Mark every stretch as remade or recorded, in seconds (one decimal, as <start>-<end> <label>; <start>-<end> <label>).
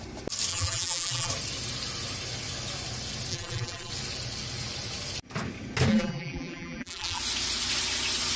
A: 0.0-0.5 recorded; 0.5-1.3 remade; 1.3-3.3 recorded; 3.3-3.9 remade; 3.9-5.9 recorded; 5.9-7.2 remade; 7.2-8.4 recorded